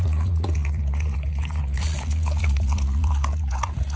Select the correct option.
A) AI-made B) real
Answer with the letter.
A